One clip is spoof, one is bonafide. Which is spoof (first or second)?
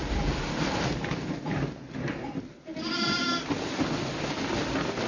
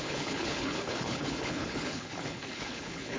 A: second